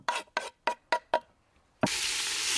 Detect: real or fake real